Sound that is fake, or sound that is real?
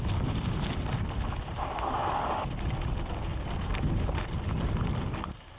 real